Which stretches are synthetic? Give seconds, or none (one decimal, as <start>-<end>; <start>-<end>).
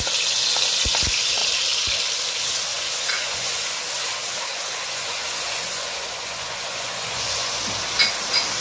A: 2.7-3.8; 4.5-7.6